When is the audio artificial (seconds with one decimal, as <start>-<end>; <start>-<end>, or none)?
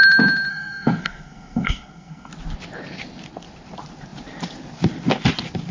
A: 0.5-2.3